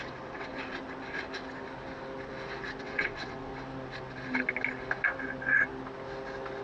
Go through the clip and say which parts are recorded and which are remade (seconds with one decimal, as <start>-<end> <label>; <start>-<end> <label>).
0.0-0.5 remade; 0.5-2.8 recorded; 2.8-3.5 remade; 3.5-6.6 recorded

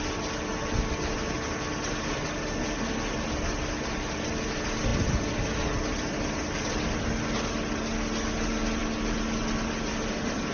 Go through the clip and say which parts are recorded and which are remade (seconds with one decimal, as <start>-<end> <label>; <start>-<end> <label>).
0.0-10.5 recorded

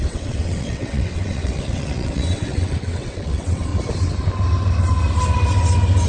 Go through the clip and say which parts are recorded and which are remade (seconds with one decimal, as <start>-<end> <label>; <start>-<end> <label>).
0.0-3.7 remade; 3.7-6.1 recorded

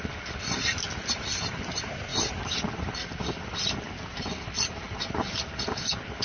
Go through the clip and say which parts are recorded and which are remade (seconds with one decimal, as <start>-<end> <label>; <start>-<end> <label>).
0.0-6.2 recorded

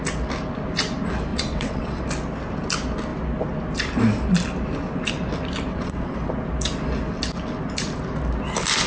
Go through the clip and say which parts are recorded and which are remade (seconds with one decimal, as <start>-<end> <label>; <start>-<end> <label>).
0.0-1.3 recorded; 1.3-2.0 remade; 2.0-5.7 recorded; 5.7-6.3 remade; 6.3-8.9 recorded